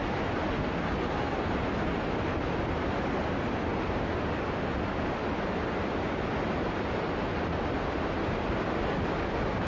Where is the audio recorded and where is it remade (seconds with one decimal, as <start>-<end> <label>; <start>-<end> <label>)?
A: 0.0-9.7 recorded